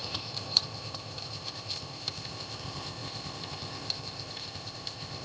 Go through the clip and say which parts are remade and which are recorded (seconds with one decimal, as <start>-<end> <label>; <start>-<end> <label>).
0.0-5.2 remade